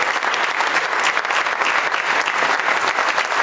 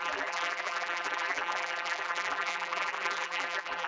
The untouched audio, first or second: first